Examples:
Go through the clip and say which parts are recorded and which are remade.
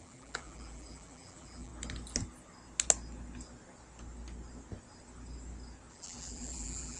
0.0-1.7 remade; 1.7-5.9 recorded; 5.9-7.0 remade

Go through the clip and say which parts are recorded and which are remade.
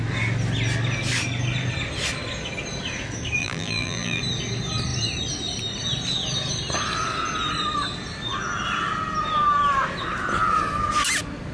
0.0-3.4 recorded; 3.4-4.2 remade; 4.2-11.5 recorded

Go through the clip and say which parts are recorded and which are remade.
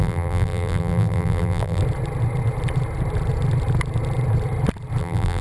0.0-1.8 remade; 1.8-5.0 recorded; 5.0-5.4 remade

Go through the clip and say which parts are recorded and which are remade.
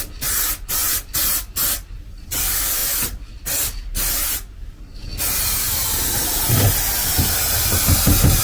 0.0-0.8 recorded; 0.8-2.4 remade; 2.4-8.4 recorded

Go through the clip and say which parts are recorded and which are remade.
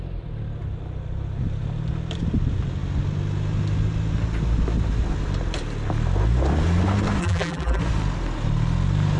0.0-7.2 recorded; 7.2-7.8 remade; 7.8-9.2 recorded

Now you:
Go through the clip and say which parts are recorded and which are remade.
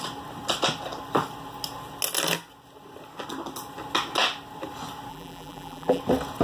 0.0-5.1 recorded; 5.1-6.0 remade; 6.0-6.4 recorded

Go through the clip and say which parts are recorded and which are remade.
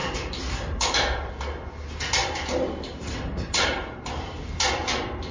0.0-1.3 remade; 1.3-2.2 recorded; 2.2-4.5 remade; 4.5-5.3 recorded